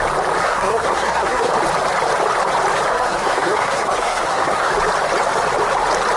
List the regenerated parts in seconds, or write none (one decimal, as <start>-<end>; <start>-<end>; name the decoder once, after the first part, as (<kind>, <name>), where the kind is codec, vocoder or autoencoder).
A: 0.4-1.5 (codec, SNAC); 2.9-4.7

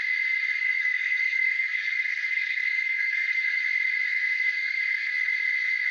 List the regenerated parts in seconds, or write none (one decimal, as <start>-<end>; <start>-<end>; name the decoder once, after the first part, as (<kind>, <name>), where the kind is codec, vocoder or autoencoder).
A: 0.6-3.6 (codec, SNAC); 4.1-5.1